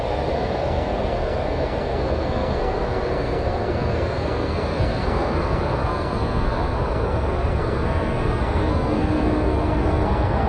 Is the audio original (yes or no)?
no